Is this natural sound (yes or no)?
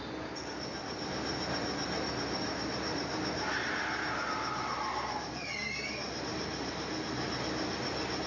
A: yes